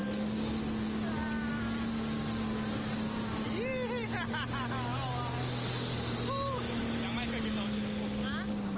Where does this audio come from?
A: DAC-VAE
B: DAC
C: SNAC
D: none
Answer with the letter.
D